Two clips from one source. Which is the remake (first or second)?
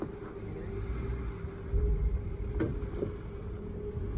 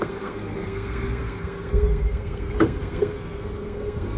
second